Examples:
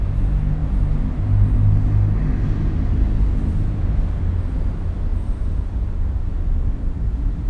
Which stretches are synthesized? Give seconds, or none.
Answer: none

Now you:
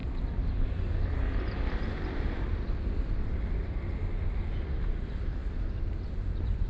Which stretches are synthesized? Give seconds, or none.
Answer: 0.0-4.0 (vocoder, BigVGAN v2)

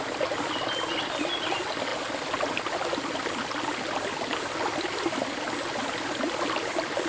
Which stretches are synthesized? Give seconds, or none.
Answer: none

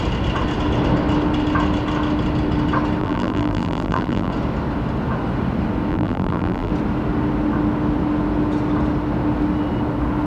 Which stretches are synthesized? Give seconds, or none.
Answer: 3.0-4.3 (vocoder, BigVGAN v2); 5.9-6.7